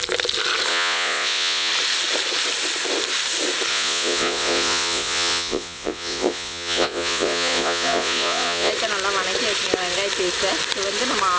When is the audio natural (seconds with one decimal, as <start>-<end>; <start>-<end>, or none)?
0.0-0.7; 1.7-3.7; 8.7-11.4